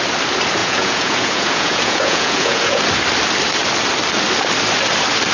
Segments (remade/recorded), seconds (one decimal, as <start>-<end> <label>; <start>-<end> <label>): 0.0-0.6 recorded; 0.6-2.8 remade; 2.8-5.3 recorded